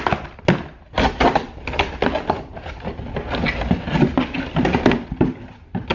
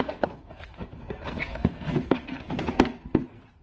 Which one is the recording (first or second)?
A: first